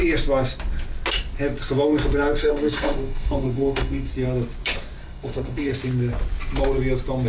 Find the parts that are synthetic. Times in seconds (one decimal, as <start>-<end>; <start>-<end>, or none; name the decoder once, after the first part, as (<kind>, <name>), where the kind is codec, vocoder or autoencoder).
2.4-4.1 (codec, SNAC); 5.0-5.7

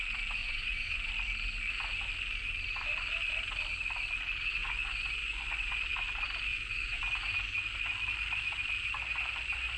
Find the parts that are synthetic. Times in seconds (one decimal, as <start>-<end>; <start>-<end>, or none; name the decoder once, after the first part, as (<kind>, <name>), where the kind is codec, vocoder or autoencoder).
0.4-1.1 (vocoder, Vocos); 4.6-5.9; 6.5-7.0

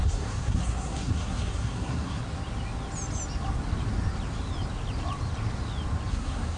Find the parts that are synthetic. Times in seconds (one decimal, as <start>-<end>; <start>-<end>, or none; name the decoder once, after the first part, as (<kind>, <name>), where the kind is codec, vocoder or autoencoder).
0.0-2.2 (codec, SNAC); 6.1-6.6

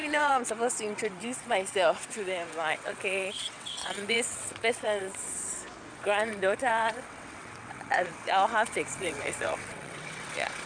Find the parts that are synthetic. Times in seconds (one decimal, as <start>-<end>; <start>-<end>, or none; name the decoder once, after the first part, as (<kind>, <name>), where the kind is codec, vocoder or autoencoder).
0.0-5.2 (vocoder, WaveNeXt); 5.9-10.7

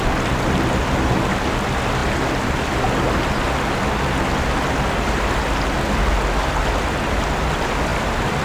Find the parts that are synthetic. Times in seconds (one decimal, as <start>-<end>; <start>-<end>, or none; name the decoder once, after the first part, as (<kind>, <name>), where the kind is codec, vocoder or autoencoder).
none

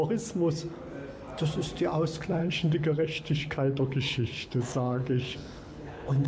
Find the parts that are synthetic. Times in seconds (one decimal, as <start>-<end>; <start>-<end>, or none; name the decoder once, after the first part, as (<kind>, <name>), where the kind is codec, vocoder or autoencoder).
2.4-6.3 (codec, HILCodec)

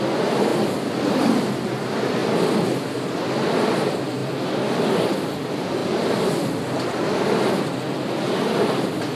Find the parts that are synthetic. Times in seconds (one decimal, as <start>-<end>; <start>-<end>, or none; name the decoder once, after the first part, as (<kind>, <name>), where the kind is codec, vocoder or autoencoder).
none

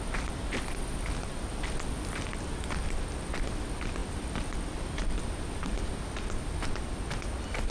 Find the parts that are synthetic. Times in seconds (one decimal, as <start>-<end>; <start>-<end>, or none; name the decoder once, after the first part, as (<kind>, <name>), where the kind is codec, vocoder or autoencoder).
none